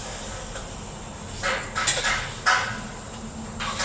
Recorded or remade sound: recorded